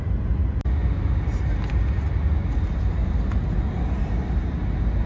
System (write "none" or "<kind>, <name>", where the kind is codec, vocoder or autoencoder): none